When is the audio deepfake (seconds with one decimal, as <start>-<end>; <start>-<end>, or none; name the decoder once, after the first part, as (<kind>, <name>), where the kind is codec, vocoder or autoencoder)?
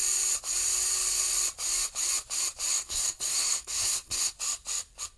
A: 2.7-4.3 (codec, SNAC)